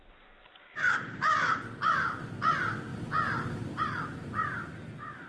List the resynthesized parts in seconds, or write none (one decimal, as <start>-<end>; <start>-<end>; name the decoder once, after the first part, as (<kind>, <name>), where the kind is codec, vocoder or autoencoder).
0.5-1.8 (vocoder, BigVGAN v2); 2.9-3.8